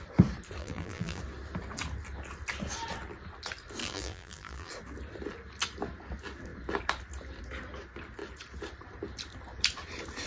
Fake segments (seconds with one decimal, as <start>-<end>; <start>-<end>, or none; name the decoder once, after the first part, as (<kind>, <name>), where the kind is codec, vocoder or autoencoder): 0.6-1.2 (vocoder, BigVGAN v2); 3.8-4.7